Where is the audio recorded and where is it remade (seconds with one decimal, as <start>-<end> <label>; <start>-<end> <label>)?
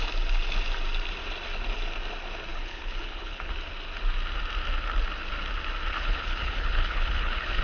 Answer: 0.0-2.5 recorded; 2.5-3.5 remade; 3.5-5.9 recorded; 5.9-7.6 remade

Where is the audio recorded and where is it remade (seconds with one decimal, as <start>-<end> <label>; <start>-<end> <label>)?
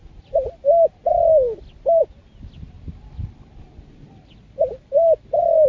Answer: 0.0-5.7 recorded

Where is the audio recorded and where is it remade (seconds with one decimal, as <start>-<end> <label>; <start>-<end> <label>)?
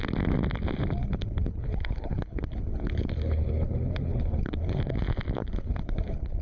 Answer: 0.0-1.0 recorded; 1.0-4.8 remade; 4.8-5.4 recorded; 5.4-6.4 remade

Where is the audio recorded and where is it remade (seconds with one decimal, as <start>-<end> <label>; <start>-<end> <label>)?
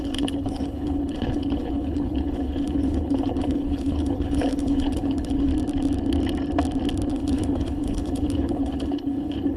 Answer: 0.0-5.5 remade; 5.5-7.1 recorded; 7.1-9.6 remade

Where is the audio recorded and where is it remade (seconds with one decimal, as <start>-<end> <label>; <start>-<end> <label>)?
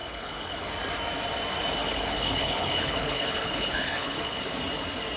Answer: 0.0-0.7 remade; 0.7-1.8 recorded; 1.8-4.4 remade; 4.4-5.2 recorded